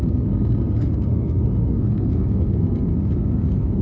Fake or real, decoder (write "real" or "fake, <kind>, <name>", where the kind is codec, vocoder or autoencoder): fake, codec, SNAC